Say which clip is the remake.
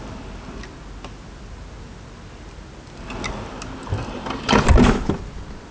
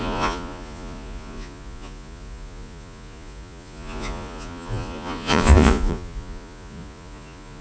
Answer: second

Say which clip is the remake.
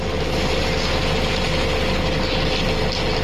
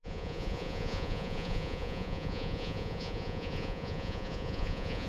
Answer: second